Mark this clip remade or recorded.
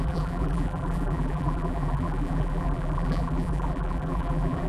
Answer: remade